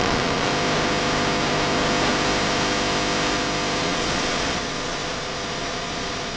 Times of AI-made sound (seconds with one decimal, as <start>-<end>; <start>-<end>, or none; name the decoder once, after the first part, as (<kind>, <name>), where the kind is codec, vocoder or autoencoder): 0.0-0.5 (vocoder, Vocos); 3.8-6.4